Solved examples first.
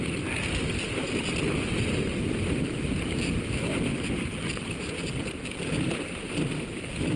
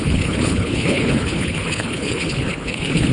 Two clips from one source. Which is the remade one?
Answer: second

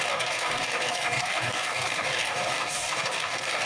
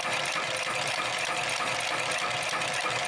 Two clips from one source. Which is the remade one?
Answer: first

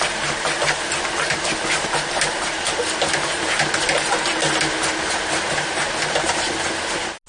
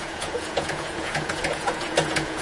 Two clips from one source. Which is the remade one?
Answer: second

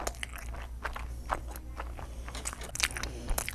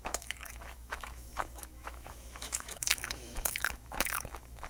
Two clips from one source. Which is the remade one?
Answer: second